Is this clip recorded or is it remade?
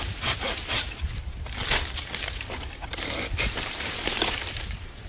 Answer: remade